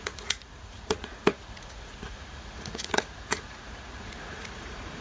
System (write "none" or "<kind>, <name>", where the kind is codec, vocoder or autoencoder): vocoder, Vocos